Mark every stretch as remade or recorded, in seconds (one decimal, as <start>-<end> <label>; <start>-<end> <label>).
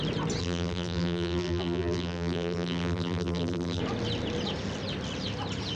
0.0-0.4 recorded; 0.4-3.8 remade; 3.8-5.8 recorded